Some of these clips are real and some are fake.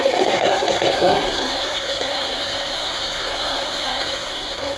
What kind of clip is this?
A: fake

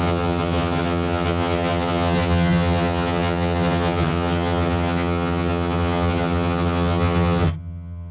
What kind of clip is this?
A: fake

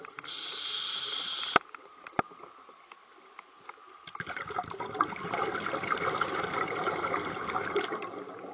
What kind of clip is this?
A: real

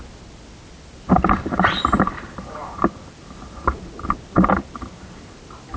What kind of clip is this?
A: real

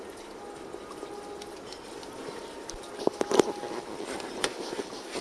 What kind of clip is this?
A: real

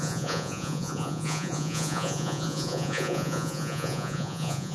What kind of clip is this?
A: fake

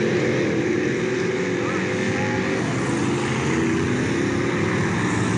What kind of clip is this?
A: real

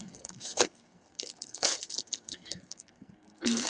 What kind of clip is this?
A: fake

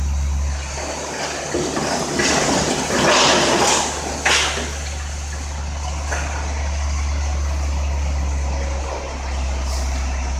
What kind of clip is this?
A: real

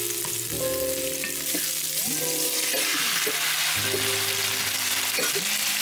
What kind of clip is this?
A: real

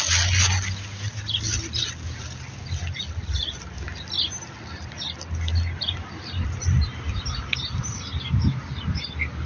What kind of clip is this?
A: real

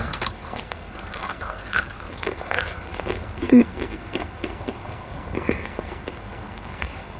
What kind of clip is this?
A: fake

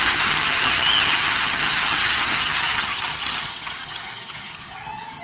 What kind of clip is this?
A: fake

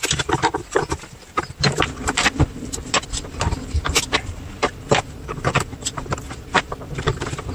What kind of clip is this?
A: fake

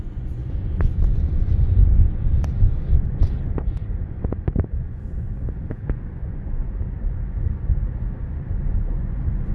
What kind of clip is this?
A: fake